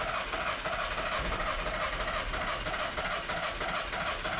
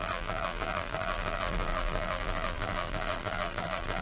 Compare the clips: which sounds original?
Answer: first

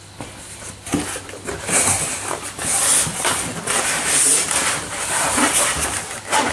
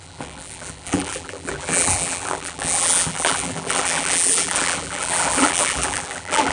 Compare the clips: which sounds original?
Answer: first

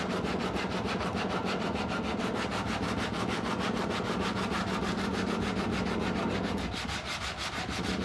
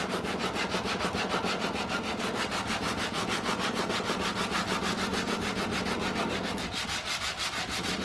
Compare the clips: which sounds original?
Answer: first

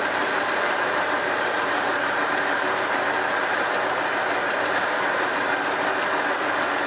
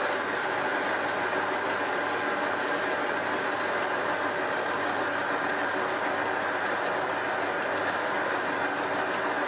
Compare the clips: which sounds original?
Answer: second